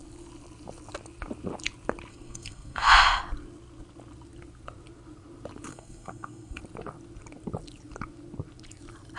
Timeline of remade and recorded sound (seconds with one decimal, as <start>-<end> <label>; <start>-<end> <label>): 0.0-2.1 recorded; 2.1-3.2 remade; 3.2-5.7 recorded; 5.7-6.6 remade; 6.6-9.2 recorded